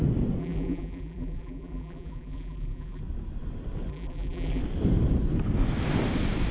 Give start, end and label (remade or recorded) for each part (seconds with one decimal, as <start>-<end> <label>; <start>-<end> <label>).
0.0-0.4 recorded; 0.4-3.0 remade; 3.0-3.9 recorded; 3.9-4.6 remade; 4.6-6.5 recorded